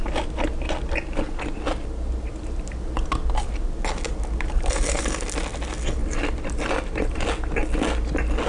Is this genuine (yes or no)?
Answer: yes